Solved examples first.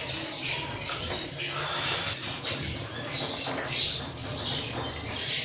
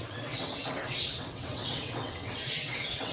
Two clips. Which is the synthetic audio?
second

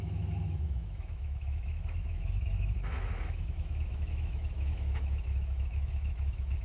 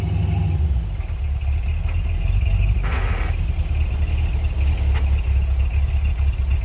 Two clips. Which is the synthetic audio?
first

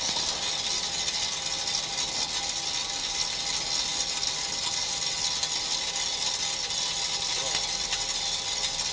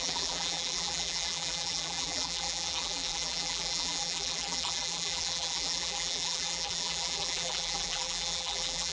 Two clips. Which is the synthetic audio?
second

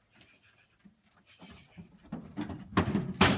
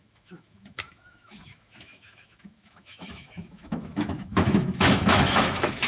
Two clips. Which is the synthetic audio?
second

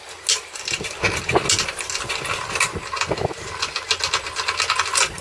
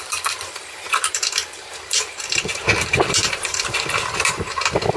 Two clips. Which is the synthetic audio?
second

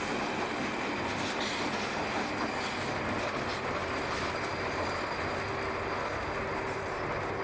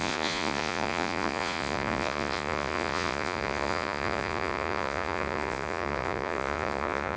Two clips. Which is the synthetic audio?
second